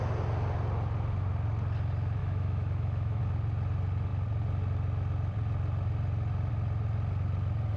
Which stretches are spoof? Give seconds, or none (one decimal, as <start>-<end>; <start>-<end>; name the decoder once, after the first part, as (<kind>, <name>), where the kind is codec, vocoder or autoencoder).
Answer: 2.2-3.2 (autoencoder, DAC-VAE)